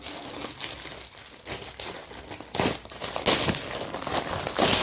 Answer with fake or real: real